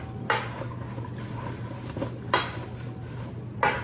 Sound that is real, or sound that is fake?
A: real